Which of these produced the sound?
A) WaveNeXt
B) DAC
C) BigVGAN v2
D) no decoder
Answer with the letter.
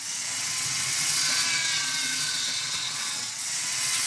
A